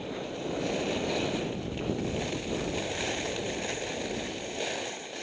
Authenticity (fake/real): real